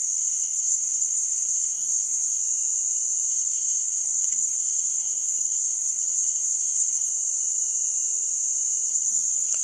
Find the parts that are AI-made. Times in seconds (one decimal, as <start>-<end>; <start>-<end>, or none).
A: 0.0-2.4; 3.3-7.1; 8.9-9.6